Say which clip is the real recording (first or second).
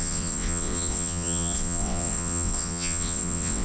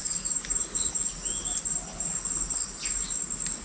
second